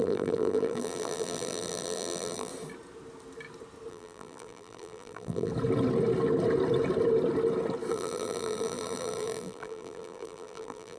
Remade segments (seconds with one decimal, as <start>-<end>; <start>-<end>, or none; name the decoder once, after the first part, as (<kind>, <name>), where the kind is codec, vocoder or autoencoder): 0.0-2.5 (vocoder, BigVGAN v2); 3.9-5.5; 7.9-11.0

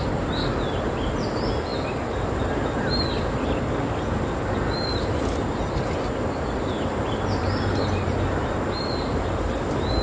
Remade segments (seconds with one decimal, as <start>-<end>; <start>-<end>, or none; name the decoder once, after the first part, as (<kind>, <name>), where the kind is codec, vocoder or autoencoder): none